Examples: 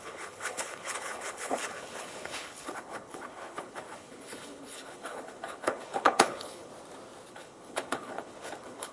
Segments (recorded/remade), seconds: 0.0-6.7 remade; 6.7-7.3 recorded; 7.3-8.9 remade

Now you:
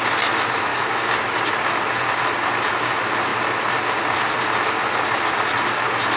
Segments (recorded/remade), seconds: 0.0-0.7 recorded; 0.7-1.5 remade; 1.5-6.2 recorded